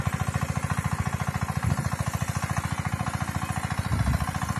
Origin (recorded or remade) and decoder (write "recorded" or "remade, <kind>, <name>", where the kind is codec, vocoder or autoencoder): recorded